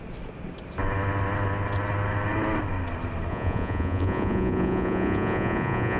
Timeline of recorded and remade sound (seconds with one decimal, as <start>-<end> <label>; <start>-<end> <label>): 0.0-3.3 recorded; 3.3-6.0 remade